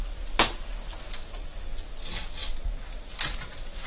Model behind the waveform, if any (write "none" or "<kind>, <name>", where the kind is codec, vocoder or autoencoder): none